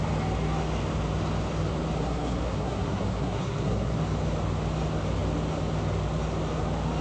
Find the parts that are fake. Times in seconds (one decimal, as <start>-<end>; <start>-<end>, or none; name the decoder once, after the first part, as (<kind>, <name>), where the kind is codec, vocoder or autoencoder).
2.0-4.0 (codec, SNAC)